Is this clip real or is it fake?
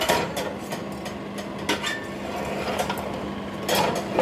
real